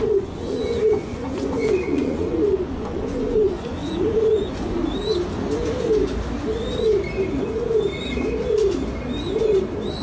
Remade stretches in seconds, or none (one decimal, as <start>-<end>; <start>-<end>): 0.0-4.8